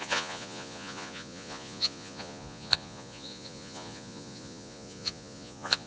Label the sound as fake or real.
fake